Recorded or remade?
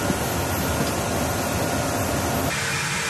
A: recorded